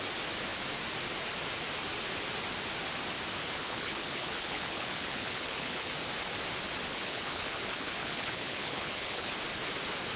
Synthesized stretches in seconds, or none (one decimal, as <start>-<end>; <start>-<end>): 3.6-5.9; 6.9-9.3